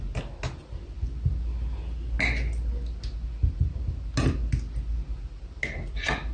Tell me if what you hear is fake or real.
real